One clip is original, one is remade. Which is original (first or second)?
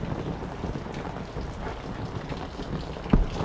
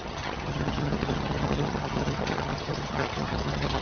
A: first